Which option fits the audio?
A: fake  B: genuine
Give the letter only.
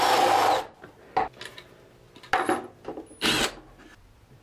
B